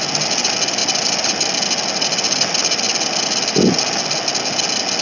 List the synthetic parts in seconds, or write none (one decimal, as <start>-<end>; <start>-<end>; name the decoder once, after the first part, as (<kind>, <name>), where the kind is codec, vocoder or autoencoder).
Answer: none